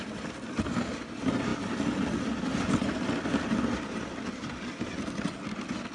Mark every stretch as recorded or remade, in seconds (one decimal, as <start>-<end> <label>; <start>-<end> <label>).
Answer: 0.0-5.9 recorded